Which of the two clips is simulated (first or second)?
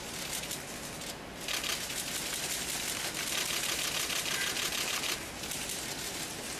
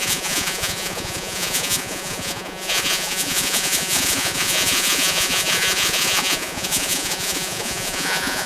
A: second